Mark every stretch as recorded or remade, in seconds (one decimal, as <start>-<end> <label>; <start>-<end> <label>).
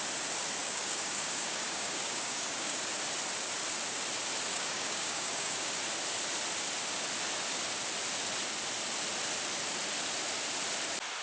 0.0-0.6 recorded; 0.6-2.8 remade; 2.8-4.5 recorded; 4.5-5.8 remade; 5.8-11.2 recorded